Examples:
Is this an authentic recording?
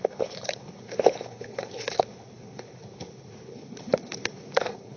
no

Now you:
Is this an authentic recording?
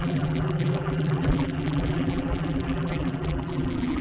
no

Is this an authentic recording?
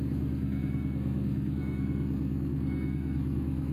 no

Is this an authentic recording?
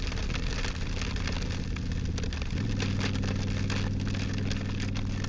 yes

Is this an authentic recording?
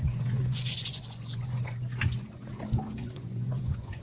no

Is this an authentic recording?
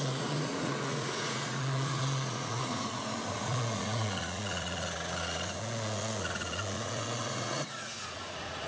no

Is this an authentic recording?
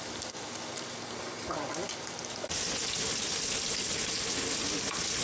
yes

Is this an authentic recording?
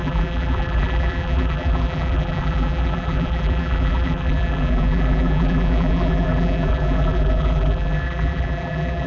no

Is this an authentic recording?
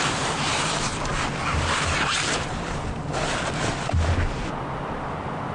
yes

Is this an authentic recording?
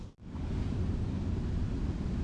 yes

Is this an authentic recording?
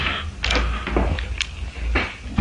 yes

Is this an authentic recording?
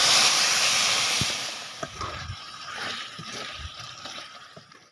no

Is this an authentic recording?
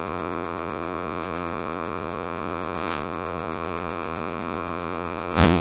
no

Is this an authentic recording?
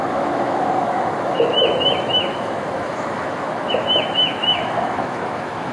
no